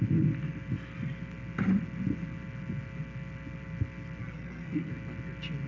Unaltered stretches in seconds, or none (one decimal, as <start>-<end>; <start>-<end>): 0.0-4.2; 4.9-5.7